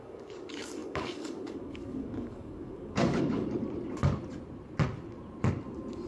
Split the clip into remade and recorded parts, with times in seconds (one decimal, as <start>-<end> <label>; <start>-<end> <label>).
0.0-3.6 remade; 3.6-6.1 recorded